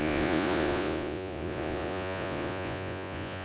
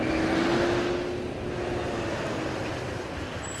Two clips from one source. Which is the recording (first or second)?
second